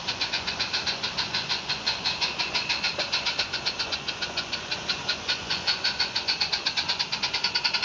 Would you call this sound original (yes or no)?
no